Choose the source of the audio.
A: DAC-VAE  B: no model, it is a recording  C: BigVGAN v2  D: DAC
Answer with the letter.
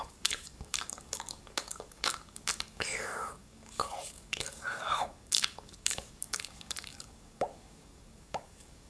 D